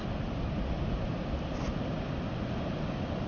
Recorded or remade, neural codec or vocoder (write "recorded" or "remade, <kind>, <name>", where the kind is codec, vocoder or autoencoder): recorded